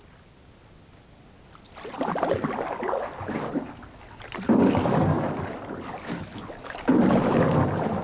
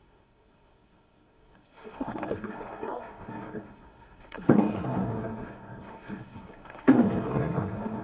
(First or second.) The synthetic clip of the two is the second